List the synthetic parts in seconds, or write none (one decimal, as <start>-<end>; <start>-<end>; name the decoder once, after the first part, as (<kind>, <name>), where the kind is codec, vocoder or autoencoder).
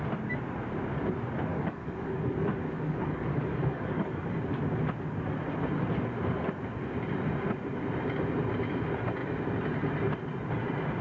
1.5-4.2 (codec, DAC)